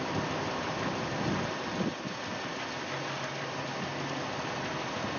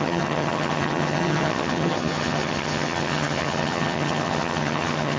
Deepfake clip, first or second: second